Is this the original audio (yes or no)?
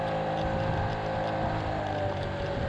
yes